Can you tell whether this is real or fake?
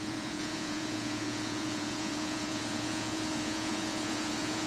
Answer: fake